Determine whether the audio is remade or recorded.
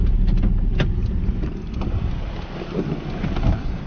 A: recorded